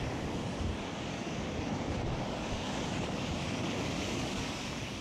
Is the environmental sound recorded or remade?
remade